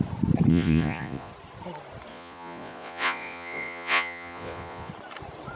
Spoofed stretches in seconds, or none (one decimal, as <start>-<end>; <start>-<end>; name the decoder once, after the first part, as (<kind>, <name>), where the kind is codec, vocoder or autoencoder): 0.5-1.3 (vocoder, Vocos); 2.1-4.9